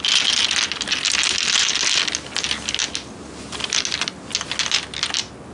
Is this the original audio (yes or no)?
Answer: yes